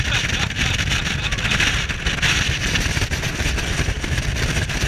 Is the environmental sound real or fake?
real